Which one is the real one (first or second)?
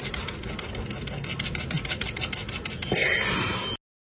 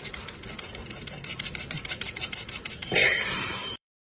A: first